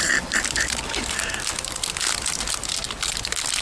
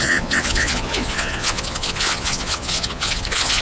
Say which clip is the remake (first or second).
second